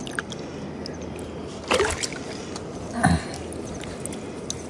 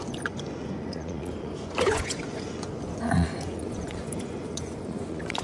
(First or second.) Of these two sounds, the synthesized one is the second